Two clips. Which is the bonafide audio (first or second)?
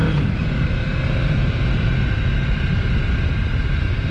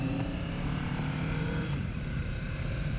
first